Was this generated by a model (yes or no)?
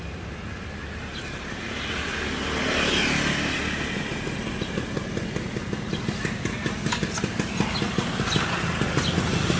no